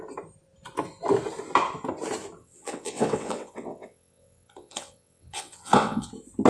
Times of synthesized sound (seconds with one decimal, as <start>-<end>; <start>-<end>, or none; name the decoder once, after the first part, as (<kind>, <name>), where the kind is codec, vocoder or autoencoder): 2.4-6.1 (vocoder, WaveNeXt)